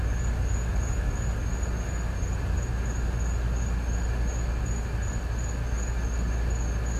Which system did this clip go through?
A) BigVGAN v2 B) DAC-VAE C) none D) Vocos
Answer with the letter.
C